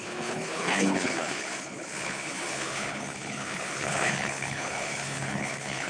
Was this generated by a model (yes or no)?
yes